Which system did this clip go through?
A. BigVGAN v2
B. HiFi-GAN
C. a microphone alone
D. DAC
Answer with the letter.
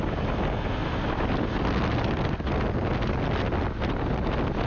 C